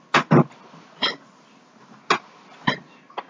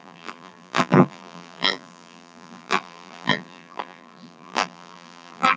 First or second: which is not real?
second